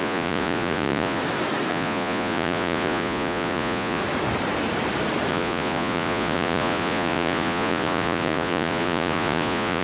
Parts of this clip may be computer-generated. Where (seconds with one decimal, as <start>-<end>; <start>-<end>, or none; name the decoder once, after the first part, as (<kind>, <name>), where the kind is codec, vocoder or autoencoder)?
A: 0.0-1.2 (vocoder, Vocos); 1.7-4.0; 5.3-9.8